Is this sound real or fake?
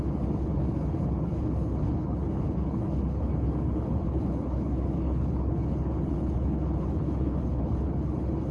fake